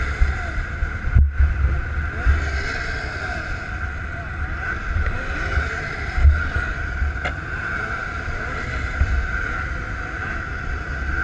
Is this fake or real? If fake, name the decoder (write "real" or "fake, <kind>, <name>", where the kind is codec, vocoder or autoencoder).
real